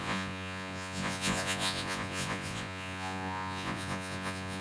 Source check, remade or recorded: remade